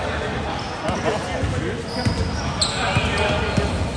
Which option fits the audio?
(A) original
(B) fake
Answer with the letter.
A